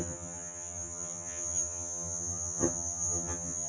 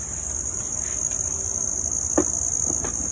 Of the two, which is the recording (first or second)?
second